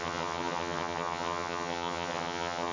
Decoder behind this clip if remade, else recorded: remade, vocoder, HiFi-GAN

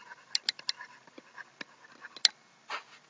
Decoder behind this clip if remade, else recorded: recorded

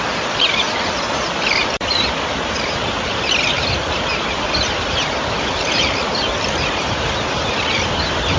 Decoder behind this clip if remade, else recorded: recorded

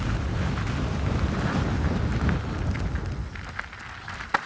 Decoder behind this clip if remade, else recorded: recorded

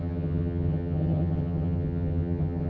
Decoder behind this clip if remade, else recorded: remade, vocoder, HiFi-GAN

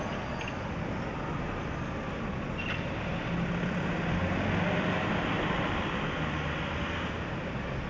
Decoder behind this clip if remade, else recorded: recorded